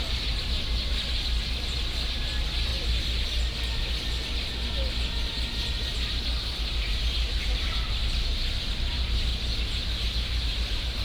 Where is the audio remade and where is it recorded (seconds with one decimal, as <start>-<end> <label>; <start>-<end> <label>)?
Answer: 0.0-2.7 remade; 2.7-5.7 recorded; 5.7-9.3 remade; 9.3-10.4 recorded; 10.4-11.0 remade